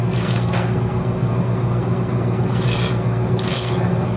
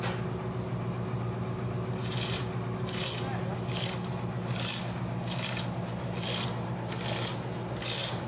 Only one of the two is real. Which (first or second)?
second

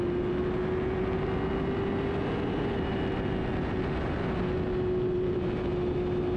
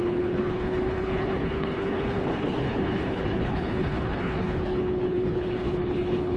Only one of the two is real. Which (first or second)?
first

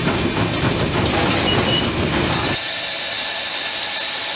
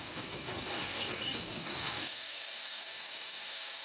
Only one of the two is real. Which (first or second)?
first